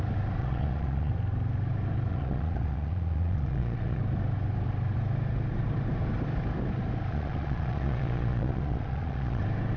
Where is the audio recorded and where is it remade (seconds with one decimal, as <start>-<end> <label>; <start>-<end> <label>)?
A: 0.0-0.4 recorded; 0.4-1.1 remade; 1.1-2.1 recorded; 2.1-4.0 remade; 4.0-7.1 recorded; 7.1-9.4 remade; 9.4-9.8 recorded